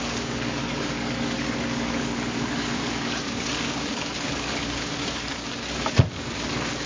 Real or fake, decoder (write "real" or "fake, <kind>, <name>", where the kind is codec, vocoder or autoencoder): fake, codec, DAC